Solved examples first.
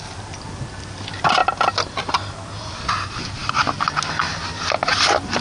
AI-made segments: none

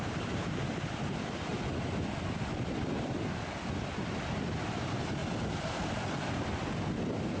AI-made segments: 0.0-1.5 (vocoder, BigVGAN v2); 4.4-5.2

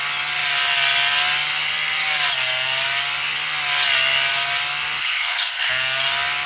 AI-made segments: 5.0-5.7 (codec, HILCodec)

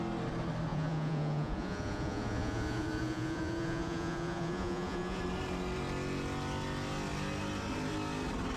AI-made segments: 0.7-5.2 (vocoder, Vocos)

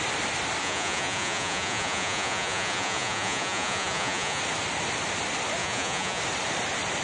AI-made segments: 0.6-4.4 (vocoder, Vocos); 5.6-6.2